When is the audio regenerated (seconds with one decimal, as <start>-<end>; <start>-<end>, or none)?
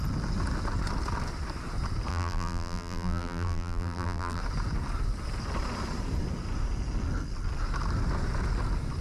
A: 2.1-4.4